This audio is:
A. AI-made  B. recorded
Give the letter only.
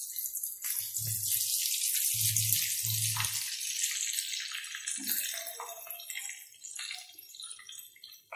B